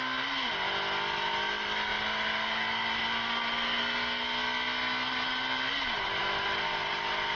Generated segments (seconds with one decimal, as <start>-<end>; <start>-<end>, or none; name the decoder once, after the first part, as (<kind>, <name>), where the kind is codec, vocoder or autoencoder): none